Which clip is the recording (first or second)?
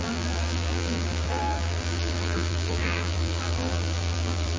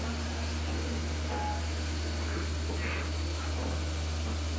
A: second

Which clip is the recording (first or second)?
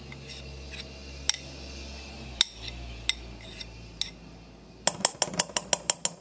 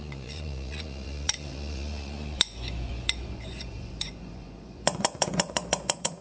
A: first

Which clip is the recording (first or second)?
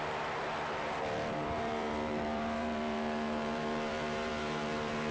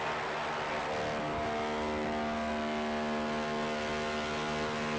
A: second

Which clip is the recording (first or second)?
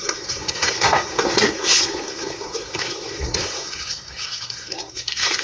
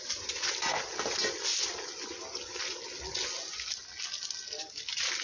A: second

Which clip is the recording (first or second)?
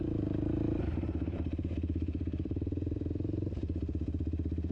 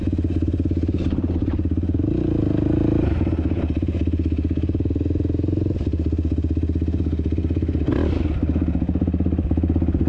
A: second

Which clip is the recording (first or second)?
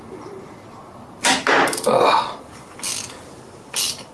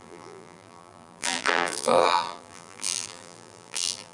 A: first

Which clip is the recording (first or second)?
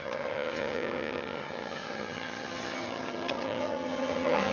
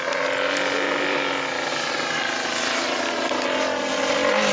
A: second